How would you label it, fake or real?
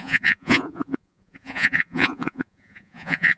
fake